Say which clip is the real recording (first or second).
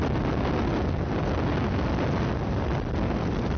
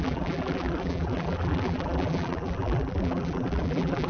first